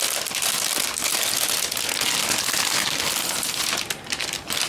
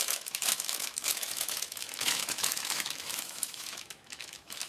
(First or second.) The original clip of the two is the first